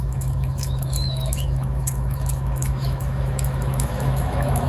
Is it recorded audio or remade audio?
remade